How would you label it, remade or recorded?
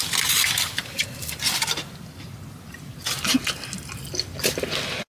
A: recorded